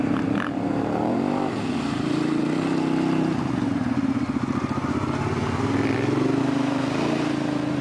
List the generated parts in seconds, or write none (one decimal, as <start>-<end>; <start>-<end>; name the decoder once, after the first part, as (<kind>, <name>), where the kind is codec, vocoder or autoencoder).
0.0-2.4 (vocoder, BigVGAN v2); 6.4-7.8